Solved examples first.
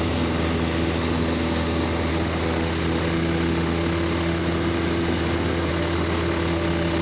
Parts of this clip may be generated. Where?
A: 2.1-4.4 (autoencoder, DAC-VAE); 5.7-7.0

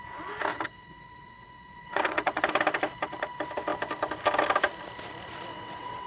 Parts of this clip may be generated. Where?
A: 0.5-2.4 (vocoder, WaveNeXt); 5.5-6.1

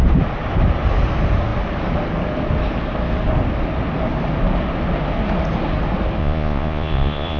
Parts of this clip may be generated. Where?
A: 6.2-7.4 (vocoder, Vocos)

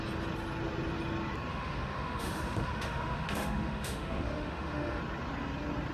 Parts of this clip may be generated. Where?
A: 1.5-5.0 (autoencoder, DAC-VAE)